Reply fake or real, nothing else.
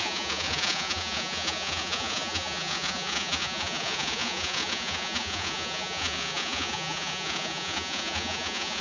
fake